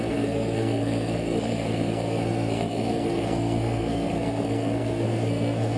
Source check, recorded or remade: remade